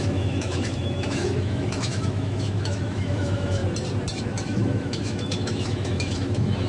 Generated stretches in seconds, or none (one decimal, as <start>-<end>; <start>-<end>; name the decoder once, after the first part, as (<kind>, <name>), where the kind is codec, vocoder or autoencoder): 0.0-3.6 (autoencoder, DAC-VAE); 4.2-6.7